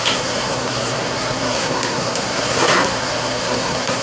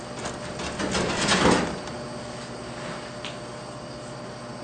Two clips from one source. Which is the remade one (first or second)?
first